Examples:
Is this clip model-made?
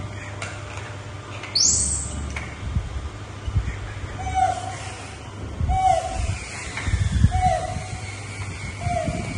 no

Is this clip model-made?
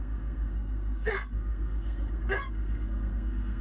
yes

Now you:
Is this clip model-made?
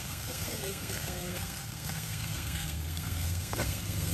yes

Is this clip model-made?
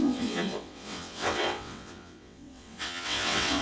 yes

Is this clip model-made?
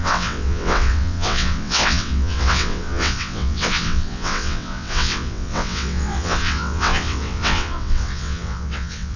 yes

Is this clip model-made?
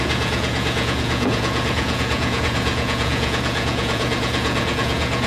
yes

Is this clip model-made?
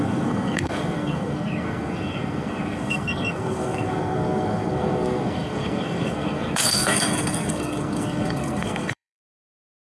yes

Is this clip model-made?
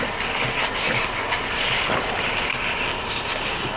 no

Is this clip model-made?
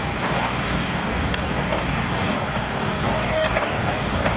yes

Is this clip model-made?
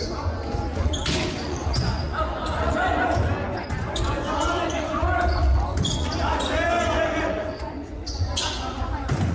yes